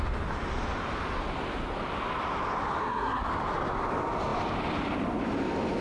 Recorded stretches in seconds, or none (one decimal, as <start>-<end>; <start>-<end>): 0.0-2.8; 3.3-5.8